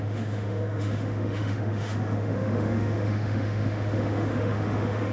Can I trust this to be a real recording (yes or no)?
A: no